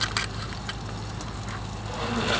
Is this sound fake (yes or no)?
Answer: no